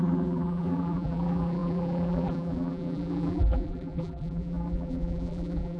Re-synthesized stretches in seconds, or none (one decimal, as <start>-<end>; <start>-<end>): 0.0-5.8

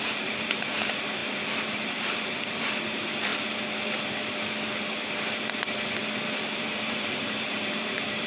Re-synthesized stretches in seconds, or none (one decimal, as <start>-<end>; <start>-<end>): 0.0-3.3; 6.5-8.3

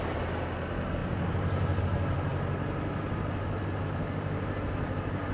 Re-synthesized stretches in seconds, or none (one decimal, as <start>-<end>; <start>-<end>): none

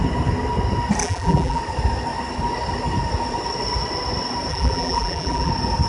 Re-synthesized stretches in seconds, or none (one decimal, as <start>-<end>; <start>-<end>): 1.0-1.6; 4.5-5.5

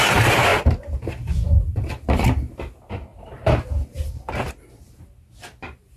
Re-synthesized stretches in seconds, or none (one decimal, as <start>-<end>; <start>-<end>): 3.1-4.9

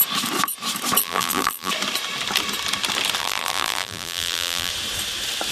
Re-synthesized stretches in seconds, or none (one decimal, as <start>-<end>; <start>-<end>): 1.0-1.7; 3.2-4.7

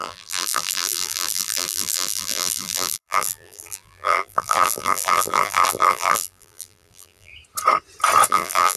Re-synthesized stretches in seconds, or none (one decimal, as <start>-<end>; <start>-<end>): 0.0-7.3; 8.3-8.8